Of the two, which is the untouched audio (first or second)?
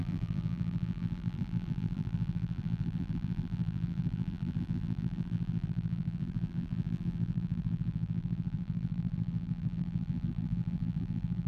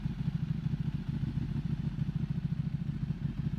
second